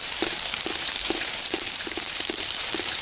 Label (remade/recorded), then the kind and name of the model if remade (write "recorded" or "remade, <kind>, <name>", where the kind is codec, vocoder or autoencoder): remade, vocoder, BigVGAN v2